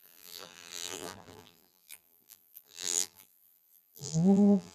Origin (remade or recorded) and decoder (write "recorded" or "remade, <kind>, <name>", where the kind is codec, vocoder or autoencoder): remade, vocoder, BigVGAN v2